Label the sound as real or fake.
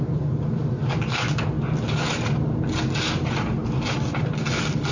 real